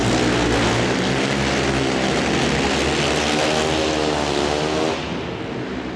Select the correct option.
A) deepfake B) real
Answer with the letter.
B